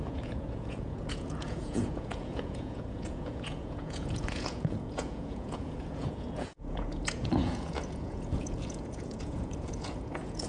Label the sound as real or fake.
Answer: fake